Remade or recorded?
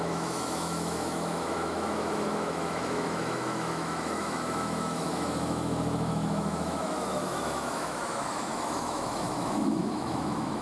remade